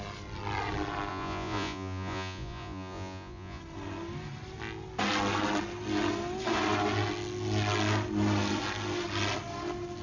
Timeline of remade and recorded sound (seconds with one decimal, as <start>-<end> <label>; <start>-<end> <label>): 0.0-1.1 recorded; 1.1-3.6 remade; 3.6-10.0 recorded